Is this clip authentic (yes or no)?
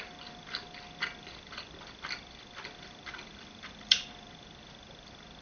yes